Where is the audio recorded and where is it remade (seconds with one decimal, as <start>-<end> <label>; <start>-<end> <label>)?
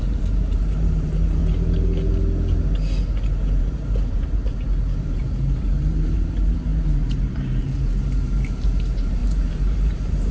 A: 0.0-1.4 remade; 1.4-3.6 recorded; 3.6-10.3 remade